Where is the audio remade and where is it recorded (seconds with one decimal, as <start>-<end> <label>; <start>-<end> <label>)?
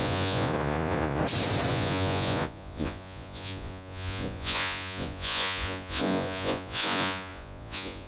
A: 0.0-1.2 remade; 1.2-1.7 recorded; 1.7-8.1 remade